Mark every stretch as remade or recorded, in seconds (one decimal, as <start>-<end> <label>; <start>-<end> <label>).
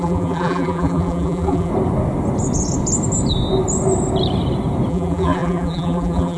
0.0-1.7 remade; 1.7-4.9 recorded; 4.9-6.4 remade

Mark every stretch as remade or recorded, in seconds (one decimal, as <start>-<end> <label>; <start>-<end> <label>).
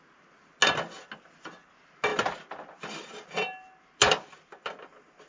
0.0-5.3 recorded